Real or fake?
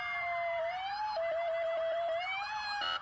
fake